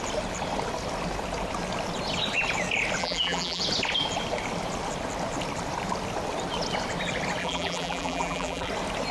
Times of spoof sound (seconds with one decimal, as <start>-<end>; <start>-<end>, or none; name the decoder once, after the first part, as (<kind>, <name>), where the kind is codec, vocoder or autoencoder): 3.0-3.6 (vocoder, BigVGAN v2); 7.4-8.7